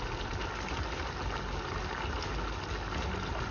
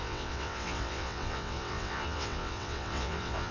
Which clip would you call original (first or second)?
first